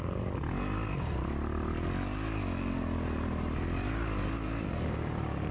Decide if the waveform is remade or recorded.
recorded